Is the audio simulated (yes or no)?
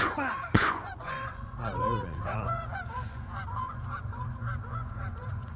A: yes